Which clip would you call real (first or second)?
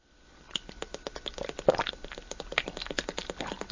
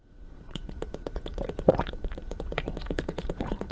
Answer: first